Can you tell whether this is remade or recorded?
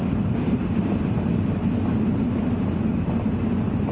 remade